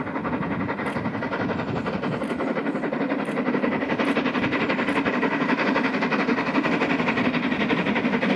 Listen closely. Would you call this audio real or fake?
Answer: real